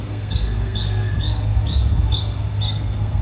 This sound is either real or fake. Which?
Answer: fake